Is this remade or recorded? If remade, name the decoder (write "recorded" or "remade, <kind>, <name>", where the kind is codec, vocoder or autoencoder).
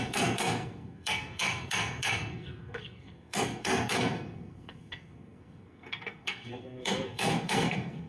remade, codec, SNAC